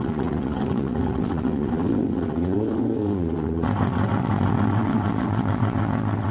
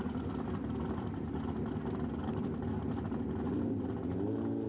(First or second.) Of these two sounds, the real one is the second